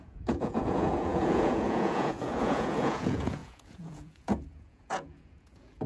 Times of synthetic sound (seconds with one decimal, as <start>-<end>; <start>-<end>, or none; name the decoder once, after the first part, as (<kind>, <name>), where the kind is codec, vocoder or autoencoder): 0.0-5.9 (vocoder, Vocos)